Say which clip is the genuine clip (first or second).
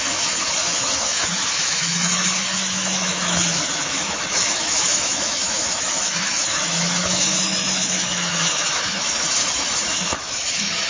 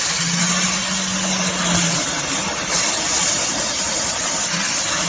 second